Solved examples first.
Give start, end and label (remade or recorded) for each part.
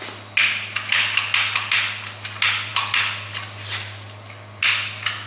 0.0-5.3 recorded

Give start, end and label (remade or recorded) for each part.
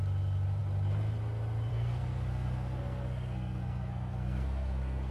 0.0-1.7 recorded; 1.7-5.1 remade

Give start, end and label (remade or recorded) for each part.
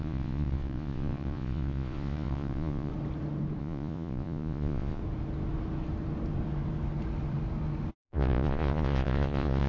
0.0-2.9 remade; 2.9-3.6 recorded; 3.6-5.0 remade; 5.0-7.9 recorded; 7.9-9.7 remade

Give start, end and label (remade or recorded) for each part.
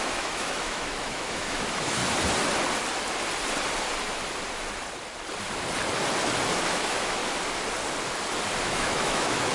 0.0-2.0 remade; 2.0-6.7 recorded; 6.7-7.2 remade; 7.2-8.6 recorded; 8.6-9.5 remade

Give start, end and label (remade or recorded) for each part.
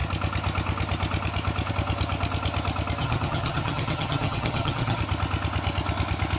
0.0-3.0 recorded; 3.0-5.0 remade; 5.0-6.4 recorded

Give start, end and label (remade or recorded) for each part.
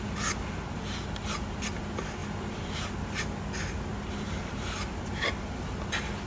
0.0-6.3 recorded